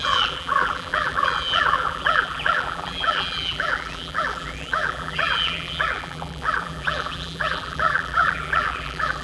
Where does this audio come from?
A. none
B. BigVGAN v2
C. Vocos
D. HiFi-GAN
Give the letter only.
B